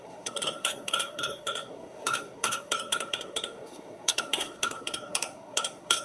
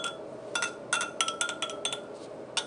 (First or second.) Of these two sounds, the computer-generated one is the first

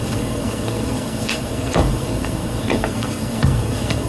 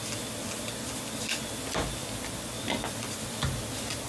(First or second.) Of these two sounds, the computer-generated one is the first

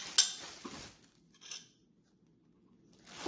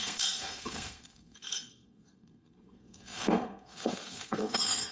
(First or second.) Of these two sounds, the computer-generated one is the second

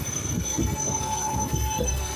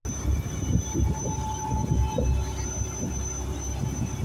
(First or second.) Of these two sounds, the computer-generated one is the first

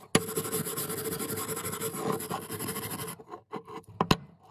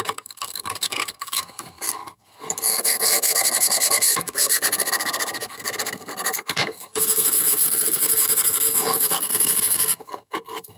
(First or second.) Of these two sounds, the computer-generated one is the second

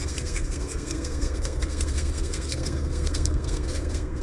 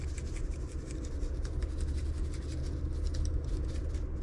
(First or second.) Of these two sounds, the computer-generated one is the first